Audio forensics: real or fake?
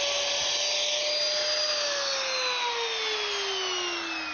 real